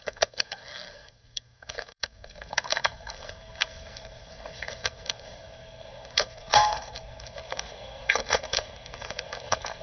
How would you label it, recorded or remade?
remade